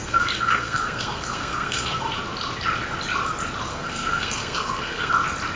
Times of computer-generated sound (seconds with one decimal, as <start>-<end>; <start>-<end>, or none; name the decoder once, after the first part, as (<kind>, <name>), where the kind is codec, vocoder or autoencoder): 0.0-2.1 (codec, SNAC); 3.7-5.1

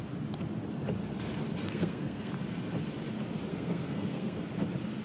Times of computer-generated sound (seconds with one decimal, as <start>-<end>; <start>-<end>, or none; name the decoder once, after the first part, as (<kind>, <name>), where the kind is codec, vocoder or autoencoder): 1.6-2.3 (codec, SNAC); 3.5-4.4

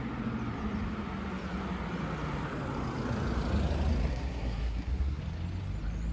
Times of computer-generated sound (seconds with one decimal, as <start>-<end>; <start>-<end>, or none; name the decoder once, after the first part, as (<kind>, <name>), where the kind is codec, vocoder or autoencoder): 4.1-5.2 (codec, SNAC)

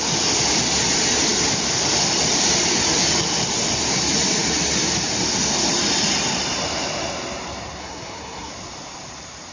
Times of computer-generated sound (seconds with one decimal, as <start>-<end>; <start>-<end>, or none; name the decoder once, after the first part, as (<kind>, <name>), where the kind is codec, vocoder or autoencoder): 7.8-8.5 (codec, SNAC)

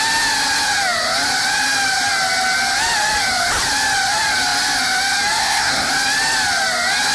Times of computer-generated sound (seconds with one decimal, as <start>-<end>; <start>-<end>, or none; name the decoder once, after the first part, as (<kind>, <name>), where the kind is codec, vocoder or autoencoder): 5.4-5.9 (codec, SNAC)

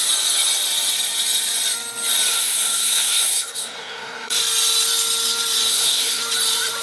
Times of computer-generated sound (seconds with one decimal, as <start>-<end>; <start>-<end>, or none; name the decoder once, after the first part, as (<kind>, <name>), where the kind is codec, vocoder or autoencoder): 2.3-4.4 (codec, SNAC); 5.7-6.2

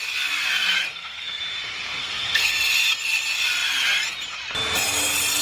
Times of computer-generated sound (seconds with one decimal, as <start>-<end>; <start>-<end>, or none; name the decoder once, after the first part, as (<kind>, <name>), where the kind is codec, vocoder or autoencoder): 0.8-1.4 (codec, SNAC); 2.0-2.5